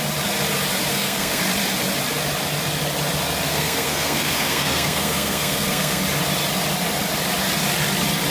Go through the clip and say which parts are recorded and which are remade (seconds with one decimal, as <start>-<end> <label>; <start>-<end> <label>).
0.0-0.9 recorded; 0.9-1.4 remade; 1.4-3.5 recorded; 3.5-6.0 remade; 6.0-8.3 recorded

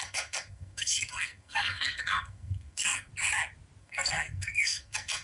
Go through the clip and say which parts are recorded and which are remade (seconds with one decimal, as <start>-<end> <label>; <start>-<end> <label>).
0.0-3.1 remade; 3.1-3.8 recorded; 3.8-5.2 remade

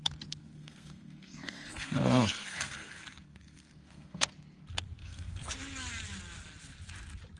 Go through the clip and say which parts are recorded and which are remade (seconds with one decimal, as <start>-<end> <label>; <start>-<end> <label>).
0.0-0.4 recorded; 0.4-4.3 remade; 4.3-5.0 recorded; 5.0-5.5 remade; 5.5-7.4 recorded

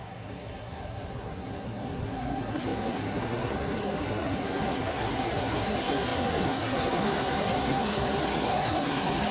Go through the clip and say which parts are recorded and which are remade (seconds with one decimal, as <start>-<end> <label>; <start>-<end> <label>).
0.0-9.3 remade

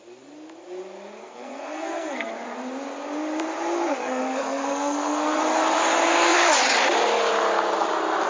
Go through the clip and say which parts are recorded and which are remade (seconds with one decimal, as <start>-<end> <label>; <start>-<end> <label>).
0.0-1.2 recorded; 1.2-2.3 remade; 2.3-4.0 recorded; 4.0-5.4 remade; 5.4-8.3 recorded

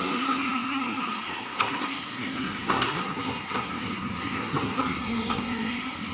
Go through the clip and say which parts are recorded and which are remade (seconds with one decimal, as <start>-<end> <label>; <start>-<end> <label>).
0.0-6.1 remade